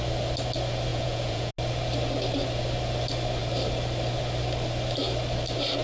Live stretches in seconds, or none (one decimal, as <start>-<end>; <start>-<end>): 0.0-0.9; 1.5-5.8